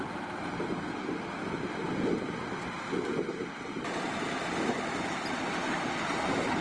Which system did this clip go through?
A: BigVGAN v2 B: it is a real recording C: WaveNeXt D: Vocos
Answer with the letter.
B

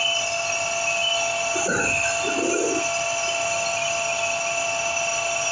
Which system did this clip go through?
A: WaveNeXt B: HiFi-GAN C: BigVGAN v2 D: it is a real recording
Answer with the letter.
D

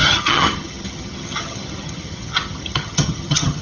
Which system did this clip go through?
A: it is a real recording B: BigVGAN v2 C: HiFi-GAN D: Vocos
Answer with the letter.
C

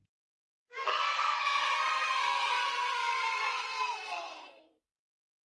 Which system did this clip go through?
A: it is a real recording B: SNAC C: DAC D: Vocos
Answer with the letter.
B